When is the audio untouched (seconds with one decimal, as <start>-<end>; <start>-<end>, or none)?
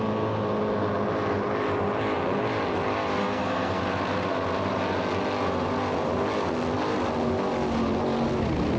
0.0-3.2; 3.8-8.8